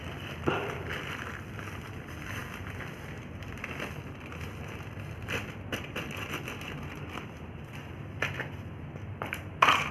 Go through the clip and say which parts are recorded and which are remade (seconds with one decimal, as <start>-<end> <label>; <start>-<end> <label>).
0.0-9.9 recorded